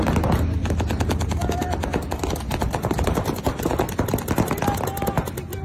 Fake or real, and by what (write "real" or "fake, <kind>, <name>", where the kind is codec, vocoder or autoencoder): real